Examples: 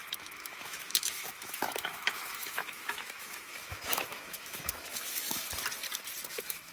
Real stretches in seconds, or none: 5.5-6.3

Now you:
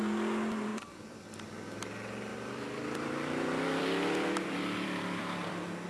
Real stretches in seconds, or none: 0.0-0.7; 1.3-2.3; 5.5-5.9

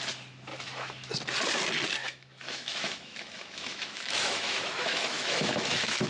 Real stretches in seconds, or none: 0.0-0.5; 1.1-2.0